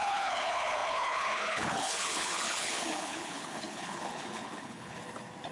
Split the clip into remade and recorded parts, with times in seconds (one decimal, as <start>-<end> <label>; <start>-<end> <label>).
0.0-5.0 remade; 5.0-5.5 recorded